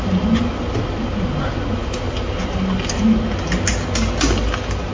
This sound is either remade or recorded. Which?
recorded